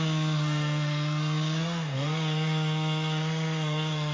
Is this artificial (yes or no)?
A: yes